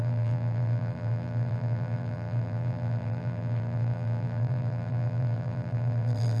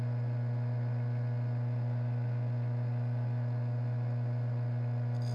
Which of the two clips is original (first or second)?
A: second